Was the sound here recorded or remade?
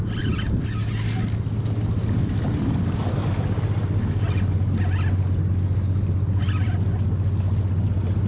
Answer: recorded